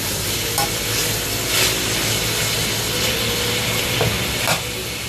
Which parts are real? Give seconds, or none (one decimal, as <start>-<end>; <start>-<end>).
0.0-5.1